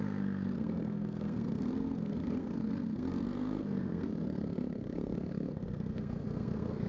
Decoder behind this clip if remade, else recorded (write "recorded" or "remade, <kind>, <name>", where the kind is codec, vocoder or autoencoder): remade, codec, SNAC